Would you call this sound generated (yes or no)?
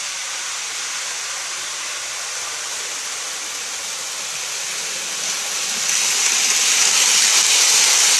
no